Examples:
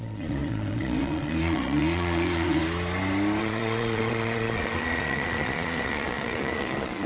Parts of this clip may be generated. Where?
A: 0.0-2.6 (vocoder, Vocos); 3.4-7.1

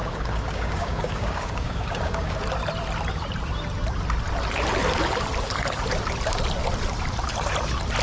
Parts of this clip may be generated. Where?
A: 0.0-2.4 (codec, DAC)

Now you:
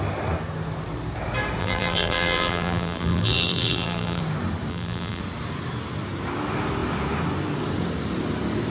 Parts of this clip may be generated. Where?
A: 1.6-4.2 (vocoder, BigVGAN v2); 4.7-5.2

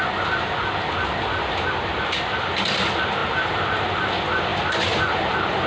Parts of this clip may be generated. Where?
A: none